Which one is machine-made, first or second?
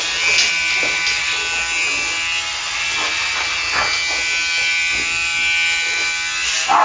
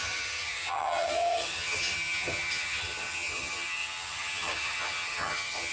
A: second